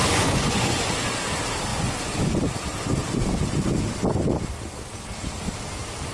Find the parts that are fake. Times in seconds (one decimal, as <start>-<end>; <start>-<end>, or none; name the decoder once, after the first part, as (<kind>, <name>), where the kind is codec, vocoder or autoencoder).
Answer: 0.0-0.9 (vocoder, Vocos); 1.7-2.6